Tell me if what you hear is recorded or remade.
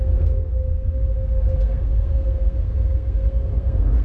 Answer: remade